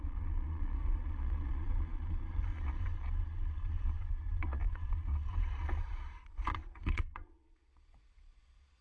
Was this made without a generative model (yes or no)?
no